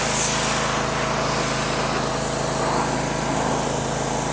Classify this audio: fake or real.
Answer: real